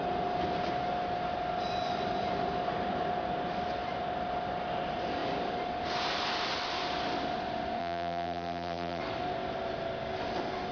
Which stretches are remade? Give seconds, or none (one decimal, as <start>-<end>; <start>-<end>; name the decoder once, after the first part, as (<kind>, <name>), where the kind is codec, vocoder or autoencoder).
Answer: 7.8-9.0 (vocoder, BigVGAN v2)